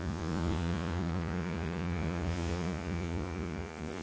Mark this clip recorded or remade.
remade